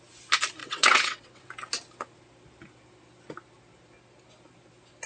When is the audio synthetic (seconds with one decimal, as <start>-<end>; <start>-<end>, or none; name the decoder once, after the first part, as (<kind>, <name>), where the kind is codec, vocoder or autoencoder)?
0.6-1.5 (vocoder, WaveNeXt)